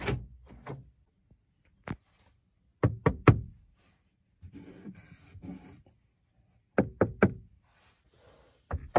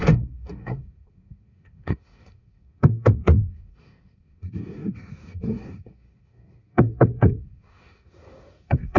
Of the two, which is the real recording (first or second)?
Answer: first